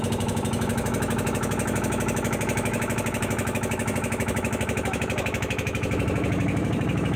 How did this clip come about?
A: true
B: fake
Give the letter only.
B